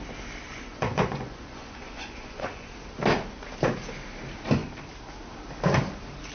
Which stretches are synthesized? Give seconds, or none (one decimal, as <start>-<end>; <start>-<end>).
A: 0.5-2.7